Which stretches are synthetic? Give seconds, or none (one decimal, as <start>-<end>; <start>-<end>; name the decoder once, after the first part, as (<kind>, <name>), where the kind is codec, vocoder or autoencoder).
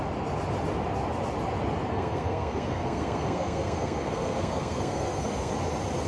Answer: 1.9-5.5 (codec, SNAC)